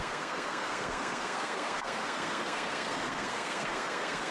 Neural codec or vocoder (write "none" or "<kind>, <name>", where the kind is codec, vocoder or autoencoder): codec, SNAC